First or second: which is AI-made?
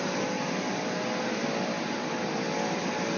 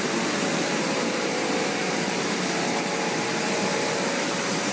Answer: second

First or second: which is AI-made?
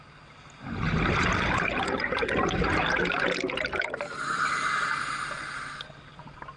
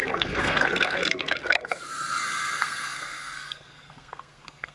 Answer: second